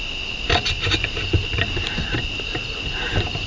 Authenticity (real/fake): real